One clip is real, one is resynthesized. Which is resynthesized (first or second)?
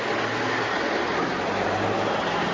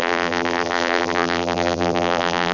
second